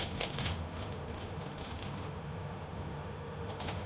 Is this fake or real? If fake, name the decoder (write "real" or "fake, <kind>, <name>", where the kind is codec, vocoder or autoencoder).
fake, autoencoder, DAC-VAE